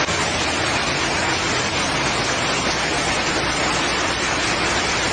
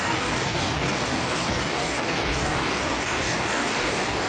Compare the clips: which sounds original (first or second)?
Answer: first